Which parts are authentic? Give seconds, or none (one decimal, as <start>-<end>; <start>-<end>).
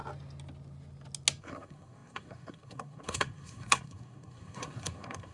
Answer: 0.0-1.4